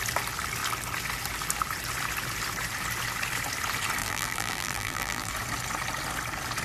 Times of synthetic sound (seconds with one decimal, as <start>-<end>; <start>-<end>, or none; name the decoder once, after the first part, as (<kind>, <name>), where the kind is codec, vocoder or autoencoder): 4.0-5.3 (vocoder, BigVGAN v2)